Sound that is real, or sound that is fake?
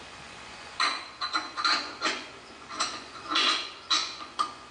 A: fake